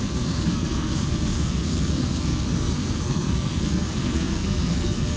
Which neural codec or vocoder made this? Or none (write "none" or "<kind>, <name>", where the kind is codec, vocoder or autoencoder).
codec, SNAC